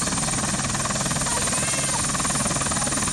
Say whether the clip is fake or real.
real